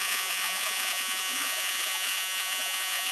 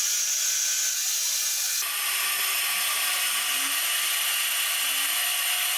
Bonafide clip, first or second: second